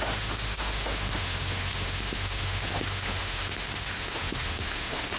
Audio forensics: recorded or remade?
remade